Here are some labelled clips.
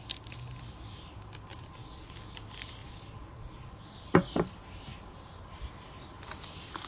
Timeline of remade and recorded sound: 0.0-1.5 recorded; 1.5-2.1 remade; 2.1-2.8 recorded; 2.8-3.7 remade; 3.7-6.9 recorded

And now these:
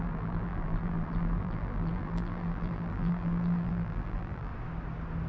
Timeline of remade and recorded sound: 0.0-4.5 remade; 4.5-5.3 recorded

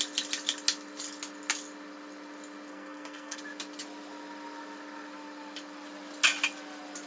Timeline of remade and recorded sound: 0.0-2.7 recorded; 2.7-3.4 remade; 3.4-7.1 recorded

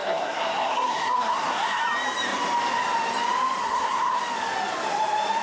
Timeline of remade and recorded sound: 0.0-1.8 remade; 1.8-3.6 recorded; 3.6-4.2 remade; 4.2-5.4 recorded